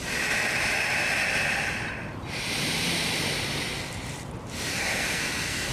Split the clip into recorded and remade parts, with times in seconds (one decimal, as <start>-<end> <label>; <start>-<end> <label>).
0.0-4.7 recorded; 4.7-5.7 remade